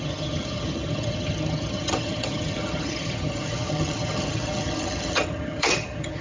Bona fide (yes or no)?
no